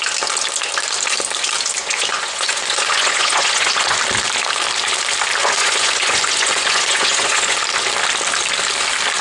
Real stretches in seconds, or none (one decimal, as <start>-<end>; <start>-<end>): 0.0-1.8; 4.0-5.4; 7.6-9.2